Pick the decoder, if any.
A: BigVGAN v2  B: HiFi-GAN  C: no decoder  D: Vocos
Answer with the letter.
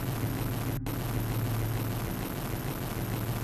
C